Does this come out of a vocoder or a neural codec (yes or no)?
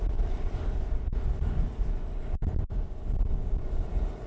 no